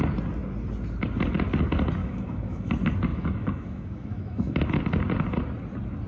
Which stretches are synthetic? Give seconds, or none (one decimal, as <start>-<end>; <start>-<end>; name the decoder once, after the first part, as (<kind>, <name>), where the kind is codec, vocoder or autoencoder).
2.0-2.7 (autoencoder, DAC-VAE); 3.1-4.7